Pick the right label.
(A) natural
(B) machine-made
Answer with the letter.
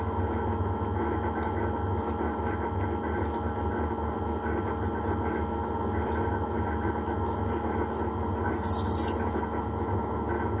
A